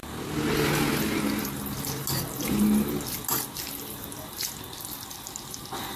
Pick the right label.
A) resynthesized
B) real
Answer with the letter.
B